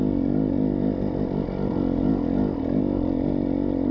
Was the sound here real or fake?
real